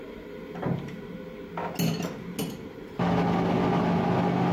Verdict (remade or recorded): recorded